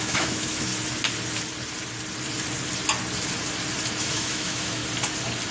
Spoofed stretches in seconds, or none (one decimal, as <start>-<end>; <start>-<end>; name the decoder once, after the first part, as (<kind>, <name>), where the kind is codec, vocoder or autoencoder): 0.0-0.7 (autoencoder, DAC-VAE); 4.0-4.8